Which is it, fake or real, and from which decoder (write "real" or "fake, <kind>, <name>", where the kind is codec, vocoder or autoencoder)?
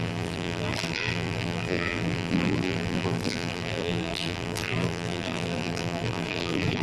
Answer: fake, vocoder, BigVGAN v2